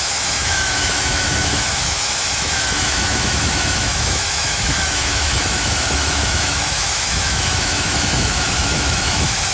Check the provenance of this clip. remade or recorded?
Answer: remade